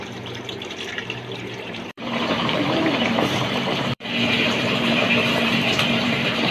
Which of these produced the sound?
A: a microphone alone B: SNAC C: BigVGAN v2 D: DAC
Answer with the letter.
C